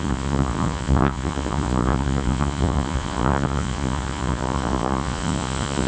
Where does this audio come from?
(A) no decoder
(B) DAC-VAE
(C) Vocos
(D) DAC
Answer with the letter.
C